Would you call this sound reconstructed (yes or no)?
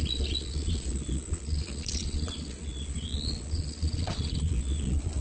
yes